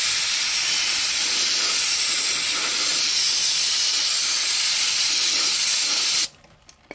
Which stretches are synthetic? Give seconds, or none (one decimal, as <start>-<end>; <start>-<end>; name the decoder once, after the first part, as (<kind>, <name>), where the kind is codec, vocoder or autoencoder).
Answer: none